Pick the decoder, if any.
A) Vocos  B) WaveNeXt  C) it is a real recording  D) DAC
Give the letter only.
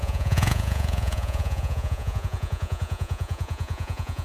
A